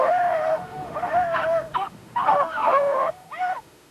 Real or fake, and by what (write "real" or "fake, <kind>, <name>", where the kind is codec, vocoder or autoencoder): fake, autoencoder, DAC-VAE